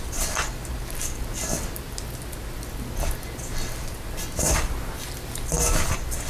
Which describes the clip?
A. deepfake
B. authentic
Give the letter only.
B